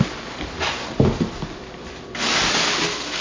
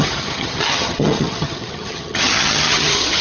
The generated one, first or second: second